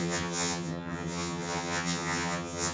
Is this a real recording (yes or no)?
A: no